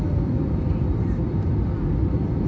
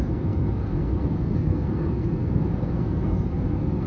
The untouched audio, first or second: first